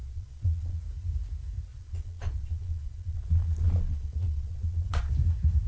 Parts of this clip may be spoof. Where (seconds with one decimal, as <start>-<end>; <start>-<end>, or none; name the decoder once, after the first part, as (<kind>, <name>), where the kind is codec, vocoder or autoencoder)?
0.0-0.8 (vocoder, Vocos); 1.7-5.1